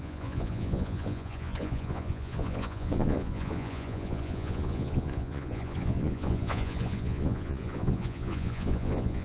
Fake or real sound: fake